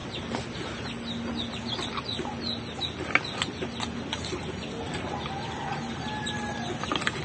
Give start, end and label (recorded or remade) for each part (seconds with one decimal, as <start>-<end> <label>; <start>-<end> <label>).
0.0-7.2 recorded